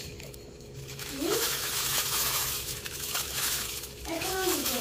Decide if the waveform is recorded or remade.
remade